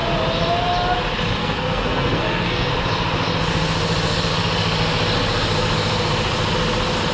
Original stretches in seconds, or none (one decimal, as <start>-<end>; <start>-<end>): 0.0-1.4; 2.7-7.1